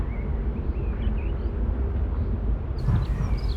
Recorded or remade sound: recorded